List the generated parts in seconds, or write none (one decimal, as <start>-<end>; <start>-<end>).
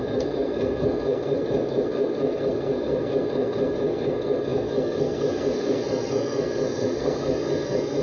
0.0-8.0